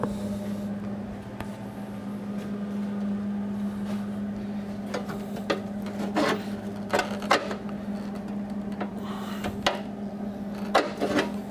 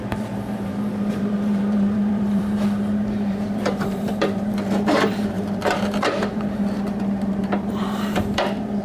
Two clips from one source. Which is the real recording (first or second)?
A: first